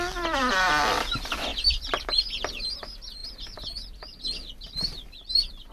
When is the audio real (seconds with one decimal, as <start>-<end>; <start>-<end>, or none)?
0.0-5.7